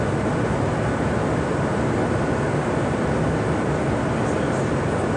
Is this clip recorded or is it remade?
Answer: recorded